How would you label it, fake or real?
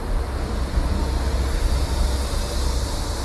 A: real